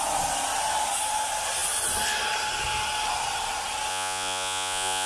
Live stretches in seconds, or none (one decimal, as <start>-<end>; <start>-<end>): 0.0-3.9